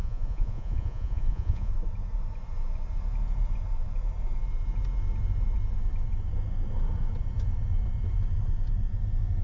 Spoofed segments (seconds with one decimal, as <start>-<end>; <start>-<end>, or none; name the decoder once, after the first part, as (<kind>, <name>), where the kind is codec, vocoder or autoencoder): 0.0-1.7 (vocoder, Vocos)